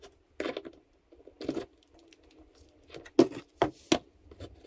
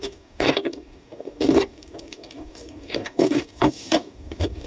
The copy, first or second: second